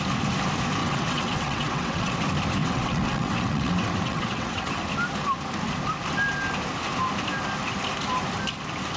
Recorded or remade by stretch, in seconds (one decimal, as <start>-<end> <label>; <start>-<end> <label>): 0.0-0.8 recorded; 0.8-2.1 remade; 2.1-2.6 recorded; 2.6-4.8 remade; 4.8-9.0 recorded